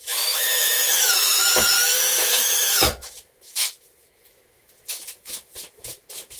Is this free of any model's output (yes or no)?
no